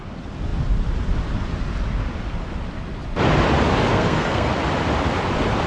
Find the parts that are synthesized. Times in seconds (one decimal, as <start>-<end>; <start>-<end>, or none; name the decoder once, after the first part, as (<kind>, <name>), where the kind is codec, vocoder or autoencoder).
3.9-4.5 (codec, SNAC)

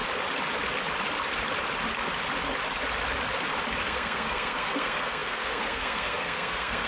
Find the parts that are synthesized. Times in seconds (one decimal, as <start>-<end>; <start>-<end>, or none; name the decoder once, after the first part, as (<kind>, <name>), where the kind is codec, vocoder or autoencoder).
3.8-6.9 (codec, SNAC)

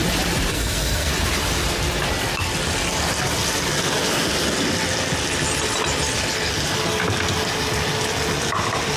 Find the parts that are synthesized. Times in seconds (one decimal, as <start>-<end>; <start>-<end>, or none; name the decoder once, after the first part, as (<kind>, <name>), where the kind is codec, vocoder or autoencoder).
0.5-1.1 (codec, SNAC)

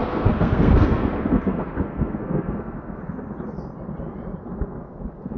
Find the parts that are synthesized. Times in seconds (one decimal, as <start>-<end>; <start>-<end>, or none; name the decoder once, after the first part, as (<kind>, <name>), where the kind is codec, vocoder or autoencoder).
0.0-3.0 (codec, SNAC)

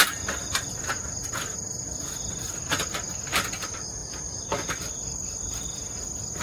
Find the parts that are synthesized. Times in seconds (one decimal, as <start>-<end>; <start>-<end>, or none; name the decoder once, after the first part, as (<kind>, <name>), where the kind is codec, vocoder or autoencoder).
none

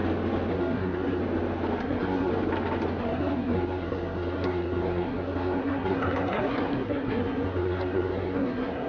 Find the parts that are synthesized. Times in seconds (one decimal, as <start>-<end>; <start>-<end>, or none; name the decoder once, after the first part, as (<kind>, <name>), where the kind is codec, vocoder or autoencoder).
0.5-1.2 (codec, SNAC); 1.8-2.3; 3.0-8.9